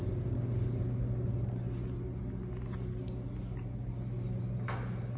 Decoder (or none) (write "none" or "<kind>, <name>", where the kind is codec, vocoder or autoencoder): none